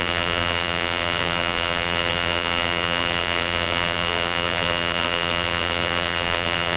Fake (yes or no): yes